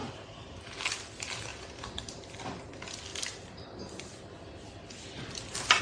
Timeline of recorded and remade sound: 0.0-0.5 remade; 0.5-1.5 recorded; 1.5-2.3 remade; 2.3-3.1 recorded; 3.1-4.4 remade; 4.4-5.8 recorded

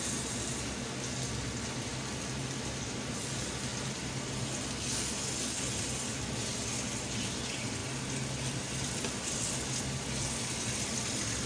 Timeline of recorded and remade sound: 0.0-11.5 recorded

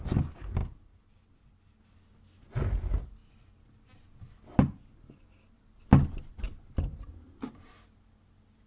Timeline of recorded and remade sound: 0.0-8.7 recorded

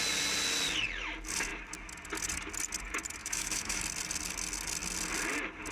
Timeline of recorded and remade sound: 0.0-3.2 recorded; 3.2-3.8 remade; 3.8-5.7 recorded

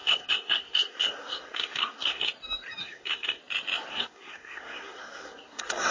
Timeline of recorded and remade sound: 0.0-2.3 remade; 2.3-2.8 recorded; 2.8-3.4 remade; 3.4-3.9 recorded; 3.9-5.9 remade